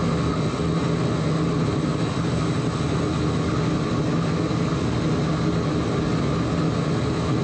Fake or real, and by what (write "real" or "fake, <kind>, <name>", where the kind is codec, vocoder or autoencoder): real